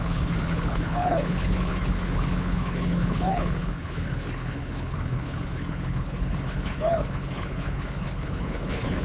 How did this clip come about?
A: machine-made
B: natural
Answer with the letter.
A